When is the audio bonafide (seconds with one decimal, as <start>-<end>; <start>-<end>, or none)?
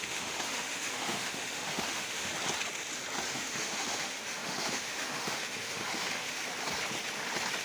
2.3-3.3; 6.4-7.6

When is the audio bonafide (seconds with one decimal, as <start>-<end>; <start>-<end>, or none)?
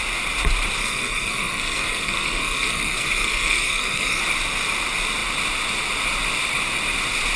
0.0-0.8; 4.2-7.4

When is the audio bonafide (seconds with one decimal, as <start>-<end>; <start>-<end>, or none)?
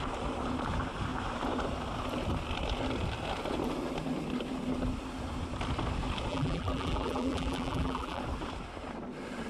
0.0-6.3; 8.2-9.5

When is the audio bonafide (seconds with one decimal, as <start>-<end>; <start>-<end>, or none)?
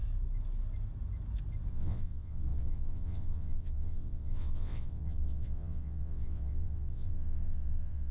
0.0-1.7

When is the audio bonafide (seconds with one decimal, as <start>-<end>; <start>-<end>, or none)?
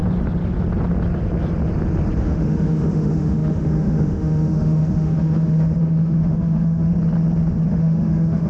0.0-2.2; 6.9-7.7